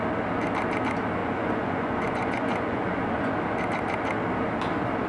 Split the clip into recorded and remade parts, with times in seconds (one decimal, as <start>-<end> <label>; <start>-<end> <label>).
0.0-1.2 recorded; 1.2-3.3 remade; 3.3-5.1 recorded